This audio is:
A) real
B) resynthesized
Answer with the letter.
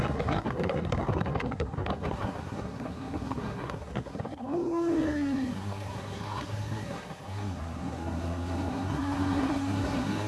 B